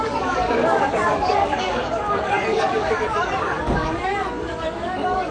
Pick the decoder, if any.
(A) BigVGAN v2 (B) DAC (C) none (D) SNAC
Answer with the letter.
B